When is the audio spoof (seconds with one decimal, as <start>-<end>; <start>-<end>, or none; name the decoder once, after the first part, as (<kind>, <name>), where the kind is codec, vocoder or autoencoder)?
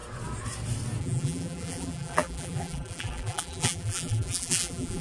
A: 1.0-5.0 (vocoder, BigVGAN v2)